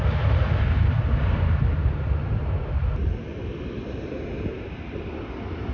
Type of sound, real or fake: real